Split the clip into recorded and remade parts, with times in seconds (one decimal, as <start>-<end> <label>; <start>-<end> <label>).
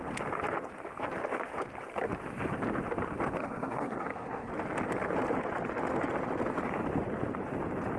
0.0-3.4 recorded; 3.4-4.5 remade; 4.5-8.0 recorded